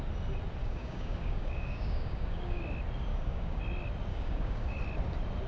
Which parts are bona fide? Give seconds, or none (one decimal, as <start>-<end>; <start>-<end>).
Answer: 0.0-0.6; 2.6-3.1; 3.6-4.1; 4.8-5.5